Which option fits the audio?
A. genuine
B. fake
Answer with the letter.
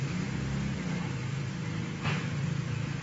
B